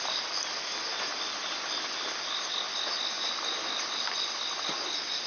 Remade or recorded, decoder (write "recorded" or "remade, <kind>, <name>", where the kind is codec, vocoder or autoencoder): recorded